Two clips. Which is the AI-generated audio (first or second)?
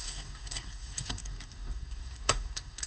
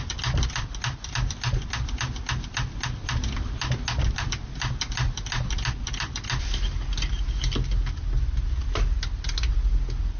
first